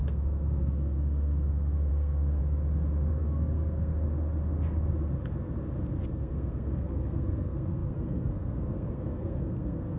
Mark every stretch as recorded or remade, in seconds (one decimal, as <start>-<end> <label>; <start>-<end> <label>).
0.0-2.4 remade; 2.4-3.1 recorded; 3.1-3.9 remade; 3.9-6.1 recorded; 6.1-10.0 remade